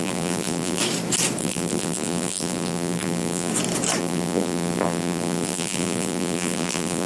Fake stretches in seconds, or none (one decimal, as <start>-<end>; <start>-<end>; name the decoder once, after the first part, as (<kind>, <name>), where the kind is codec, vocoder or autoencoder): 0.0-0.8 (vocoder, BigVGAN v2); 1.4-3.5; 4.0-7.1